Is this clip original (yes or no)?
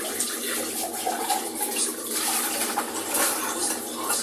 no